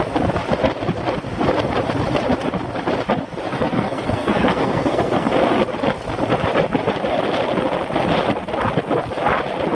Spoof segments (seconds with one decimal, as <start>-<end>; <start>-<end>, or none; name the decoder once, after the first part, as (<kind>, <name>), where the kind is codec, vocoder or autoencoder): 3.5-5.3 (codec, SNAC)